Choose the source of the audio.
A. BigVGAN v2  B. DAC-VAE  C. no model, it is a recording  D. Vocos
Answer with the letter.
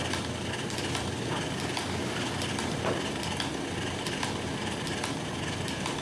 A